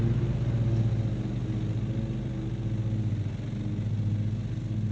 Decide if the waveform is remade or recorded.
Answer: recorded